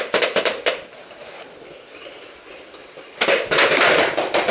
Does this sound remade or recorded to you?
recorded